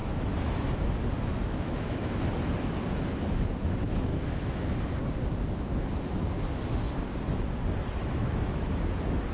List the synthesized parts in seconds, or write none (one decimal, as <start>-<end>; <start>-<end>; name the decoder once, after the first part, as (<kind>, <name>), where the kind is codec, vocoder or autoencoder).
0.0-0.9 (autoencoder, DAC-VAE); 1.3-2.2; 4.1-5.0; 8.0-8.7